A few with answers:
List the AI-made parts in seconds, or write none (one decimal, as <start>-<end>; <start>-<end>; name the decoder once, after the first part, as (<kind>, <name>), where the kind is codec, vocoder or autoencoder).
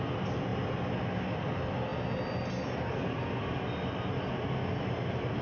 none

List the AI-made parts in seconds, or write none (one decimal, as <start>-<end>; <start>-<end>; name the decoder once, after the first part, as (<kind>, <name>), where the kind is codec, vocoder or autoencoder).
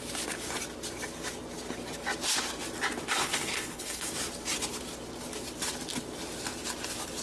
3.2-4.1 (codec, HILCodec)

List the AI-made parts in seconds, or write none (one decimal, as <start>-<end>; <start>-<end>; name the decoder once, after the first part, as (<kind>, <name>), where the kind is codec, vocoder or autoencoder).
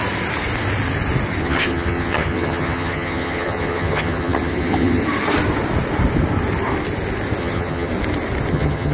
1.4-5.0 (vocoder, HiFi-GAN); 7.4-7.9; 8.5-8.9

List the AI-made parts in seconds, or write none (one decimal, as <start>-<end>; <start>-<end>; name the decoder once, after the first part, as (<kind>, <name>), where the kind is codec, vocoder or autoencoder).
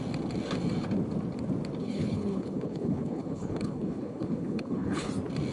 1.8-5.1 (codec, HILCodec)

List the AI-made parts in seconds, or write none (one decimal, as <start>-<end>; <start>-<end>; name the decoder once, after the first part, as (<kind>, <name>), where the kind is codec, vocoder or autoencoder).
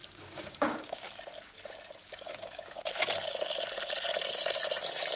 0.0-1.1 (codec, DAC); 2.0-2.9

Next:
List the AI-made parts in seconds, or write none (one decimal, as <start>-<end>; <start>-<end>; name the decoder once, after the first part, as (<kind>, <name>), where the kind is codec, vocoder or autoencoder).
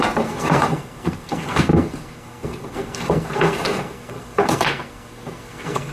0.0-5.9 (codec, SNAC)